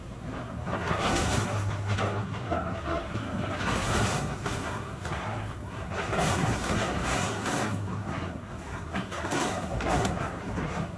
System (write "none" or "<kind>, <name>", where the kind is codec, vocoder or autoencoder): codec, SNAC